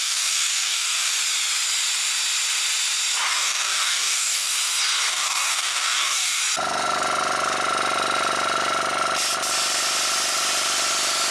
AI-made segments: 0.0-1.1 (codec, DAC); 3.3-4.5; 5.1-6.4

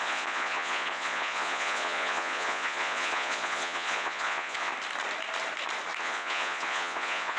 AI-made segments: 0.0-4.7 (vocoder, Vocos); 6.0-7.4

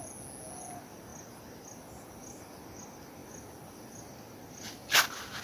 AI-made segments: none

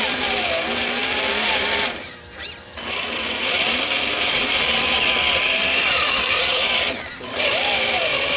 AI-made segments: 0.0-8.4 (vocoder, BigVGAN v2)